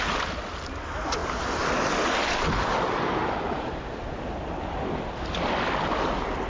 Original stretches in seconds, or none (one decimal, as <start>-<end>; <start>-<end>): 0.0-6.5